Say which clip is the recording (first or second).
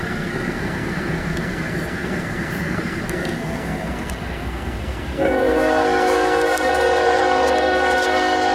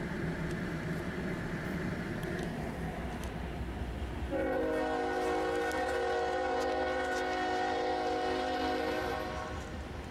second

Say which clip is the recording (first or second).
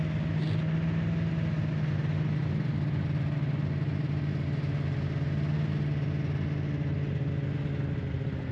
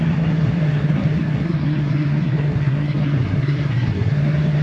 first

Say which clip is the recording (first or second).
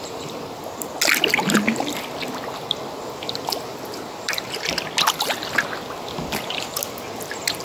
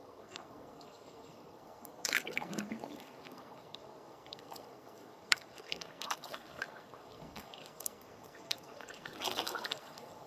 first